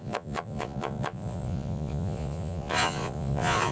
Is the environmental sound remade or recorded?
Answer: remade